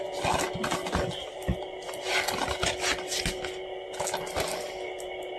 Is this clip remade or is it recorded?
recorded